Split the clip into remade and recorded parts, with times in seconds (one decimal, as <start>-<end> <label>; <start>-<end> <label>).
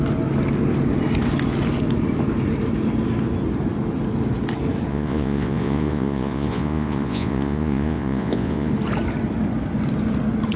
0.0-4.9 recorded; 4.9-8.7 remade; 8.7-10.6 recorded